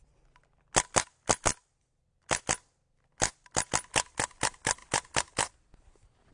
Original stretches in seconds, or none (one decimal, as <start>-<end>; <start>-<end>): 0.0-6.3